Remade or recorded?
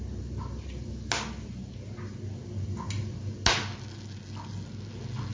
recorded